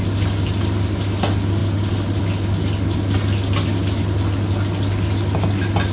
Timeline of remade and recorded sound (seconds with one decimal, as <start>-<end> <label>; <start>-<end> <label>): 0.0-5.9 recorded

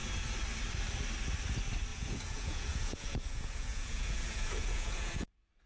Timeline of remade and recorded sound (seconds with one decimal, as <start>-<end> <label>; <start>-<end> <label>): 0.0-1.9 recorded; 1.9-5.3 remade; 5.3-5.7 recorded

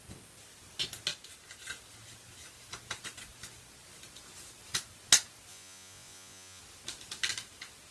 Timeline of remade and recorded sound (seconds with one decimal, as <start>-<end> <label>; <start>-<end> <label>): 0.0-5.5 recorded; 5.5-6.6 remade; 6.6-7.9 recorded

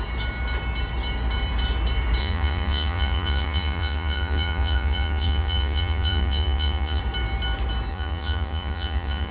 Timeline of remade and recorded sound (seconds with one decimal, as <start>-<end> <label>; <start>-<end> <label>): 0.0-2.2 recorded; 2.2-7.0 remade; 7.0-7.9 recorded; 7.9-9.3 remade